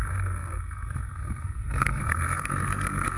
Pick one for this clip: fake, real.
fake